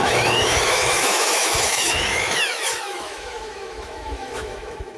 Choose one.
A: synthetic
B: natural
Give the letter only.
A